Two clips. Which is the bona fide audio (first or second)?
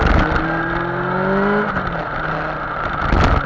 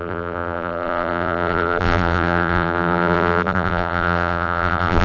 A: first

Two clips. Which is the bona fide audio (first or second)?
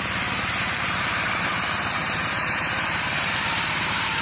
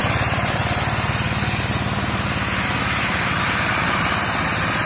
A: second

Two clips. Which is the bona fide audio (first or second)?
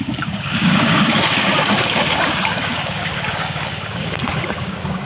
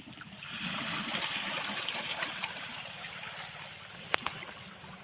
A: second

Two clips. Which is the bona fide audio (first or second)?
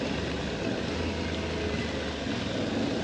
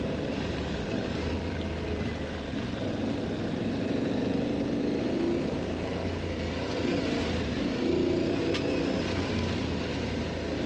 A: first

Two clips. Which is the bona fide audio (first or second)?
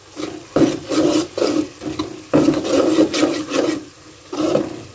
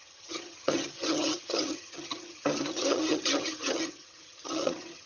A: first